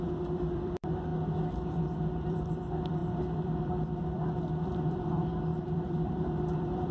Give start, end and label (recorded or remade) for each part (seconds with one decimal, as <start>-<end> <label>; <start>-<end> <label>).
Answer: 0.0-1.1 remade; 1.1-1.7 recorded; 1.7-6.9 remade